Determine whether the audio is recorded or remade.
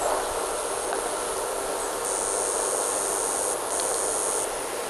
recorded